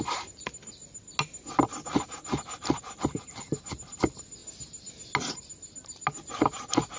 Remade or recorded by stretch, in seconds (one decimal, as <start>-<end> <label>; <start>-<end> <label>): 0.0-7.0 recorded